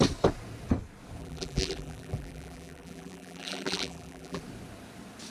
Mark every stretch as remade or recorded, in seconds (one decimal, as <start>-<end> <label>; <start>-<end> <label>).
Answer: 0.0-1.2 recorded; 1.2-4.4 remade; 4.4-5.3 recorded